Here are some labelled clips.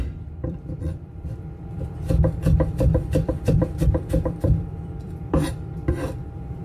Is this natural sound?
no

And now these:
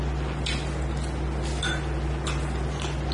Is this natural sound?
yes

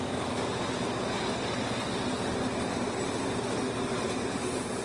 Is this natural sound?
yes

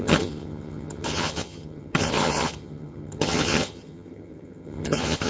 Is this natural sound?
no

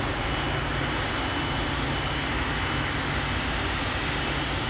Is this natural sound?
yes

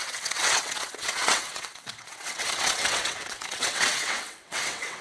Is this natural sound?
no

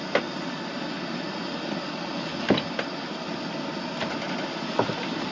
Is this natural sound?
yes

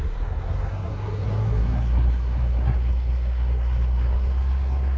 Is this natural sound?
no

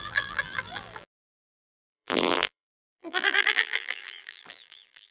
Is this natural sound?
no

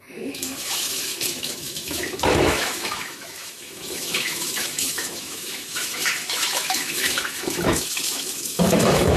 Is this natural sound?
no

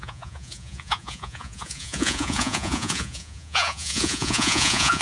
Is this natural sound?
no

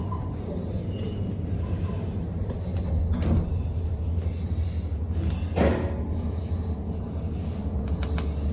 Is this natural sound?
yes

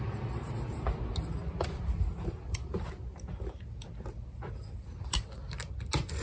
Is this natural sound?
yes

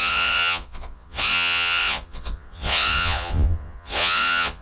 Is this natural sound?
no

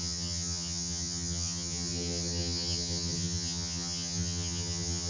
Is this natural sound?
no